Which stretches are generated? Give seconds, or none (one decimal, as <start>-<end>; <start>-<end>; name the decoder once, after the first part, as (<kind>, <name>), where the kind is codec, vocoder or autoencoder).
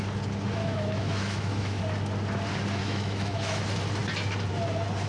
0.6-1.8 (autoencoder, DAC-VAE); 2.8-3.6